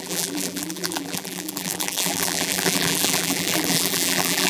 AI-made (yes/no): yes